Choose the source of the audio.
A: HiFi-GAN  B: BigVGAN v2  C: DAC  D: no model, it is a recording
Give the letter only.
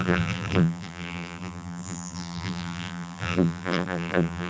B